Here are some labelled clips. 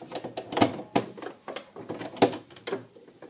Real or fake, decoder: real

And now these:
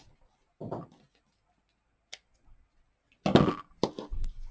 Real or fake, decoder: real